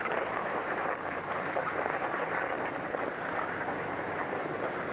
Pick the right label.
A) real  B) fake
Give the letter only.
B